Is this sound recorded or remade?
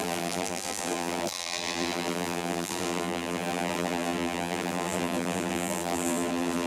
remade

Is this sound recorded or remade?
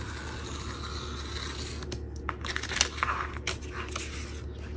recorded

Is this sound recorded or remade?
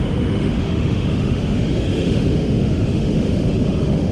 remade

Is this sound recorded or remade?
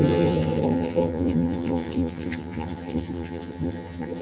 remade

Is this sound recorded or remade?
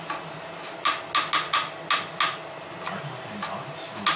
recorded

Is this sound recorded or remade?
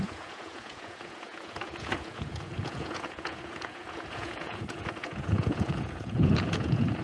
remade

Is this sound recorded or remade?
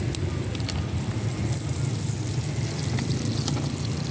recorded